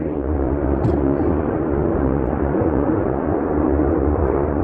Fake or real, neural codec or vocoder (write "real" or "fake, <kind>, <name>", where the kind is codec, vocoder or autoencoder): fake, vocoder, Vocos